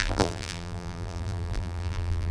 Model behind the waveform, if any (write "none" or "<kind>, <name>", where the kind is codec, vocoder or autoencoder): vocoder, BigVGAN v2